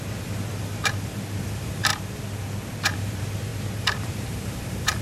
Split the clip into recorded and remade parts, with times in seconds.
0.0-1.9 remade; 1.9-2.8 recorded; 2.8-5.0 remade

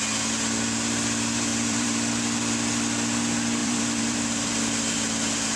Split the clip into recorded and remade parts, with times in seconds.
0.0-1.5 recorded; 1.5-2.1 remade; 2.1-3.6 recorded; 3.6-4.5 remade; 4.5-5.6 recorded

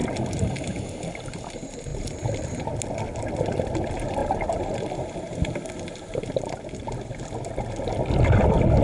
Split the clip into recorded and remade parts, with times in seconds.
0.0-1.9 recorded; 1.9-2.5 remade; 2.5-8.8 recorded

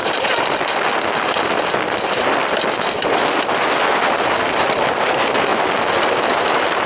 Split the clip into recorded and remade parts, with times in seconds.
0.0-4.1 recorded; 4.1-5.5 remade; 5.5-6.2 recorded; 6.2-6.9 remade

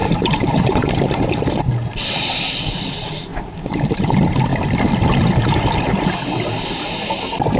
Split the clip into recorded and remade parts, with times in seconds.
0.0-2.4 remade; 2.4-3.3 recorded; 3.3-4.1 remade; 4.1-7.6 recorded

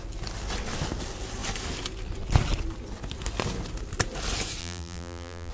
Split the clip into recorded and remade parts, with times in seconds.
0.0-4.6 recorded; 4.6-5.5 remade

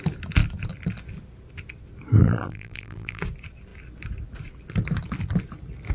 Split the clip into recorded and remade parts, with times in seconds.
0.0-2.2 recorded; 2.2-3.2 remade; 3.2-5.9 recorded